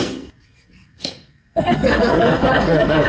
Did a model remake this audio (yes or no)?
yes